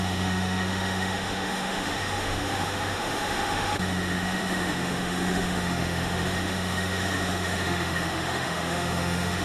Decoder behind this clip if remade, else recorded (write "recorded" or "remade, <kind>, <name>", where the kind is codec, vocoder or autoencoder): remade, autoencoder, DAC-VAE